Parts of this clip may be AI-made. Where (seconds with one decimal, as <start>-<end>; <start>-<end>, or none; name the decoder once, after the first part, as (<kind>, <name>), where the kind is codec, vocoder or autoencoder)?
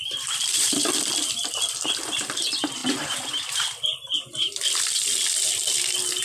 0.0-2.8 (vocoder, BigVGAN v2)